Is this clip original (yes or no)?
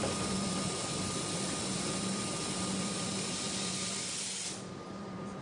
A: no